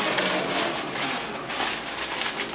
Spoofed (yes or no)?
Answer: no